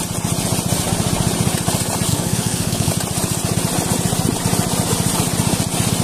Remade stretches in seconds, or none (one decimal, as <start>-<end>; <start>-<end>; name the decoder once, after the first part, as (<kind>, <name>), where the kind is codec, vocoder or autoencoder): 2.1-2.9 (codec, SNAC)